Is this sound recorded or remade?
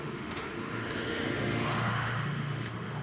remade